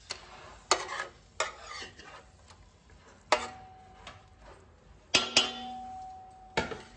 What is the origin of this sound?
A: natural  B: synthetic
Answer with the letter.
A